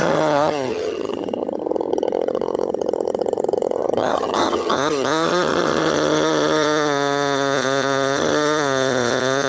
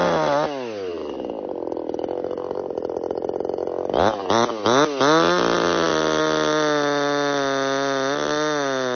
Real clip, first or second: second